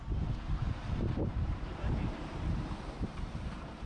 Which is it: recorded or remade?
remade